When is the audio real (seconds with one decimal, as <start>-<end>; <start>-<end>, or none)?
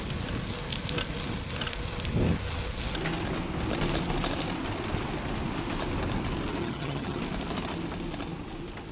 0.0-6.6; 7.2-8.9